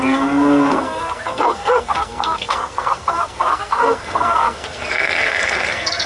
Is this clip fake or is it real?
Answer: fake